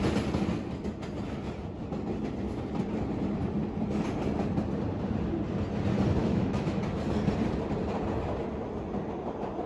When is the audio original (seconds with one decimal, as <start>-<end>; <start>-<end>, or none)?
0.0-6.2; 6.8-9.7